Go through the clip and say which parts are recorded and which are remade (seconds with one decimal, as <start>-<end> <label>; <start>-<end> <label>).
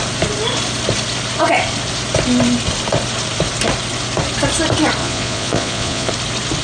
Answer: 0.0-5.0 recorded; 5.0-6.1 remade; 6.1-6.6 recorded